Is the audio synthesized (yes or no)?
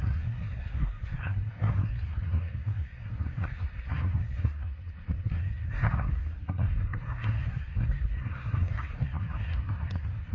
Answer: yes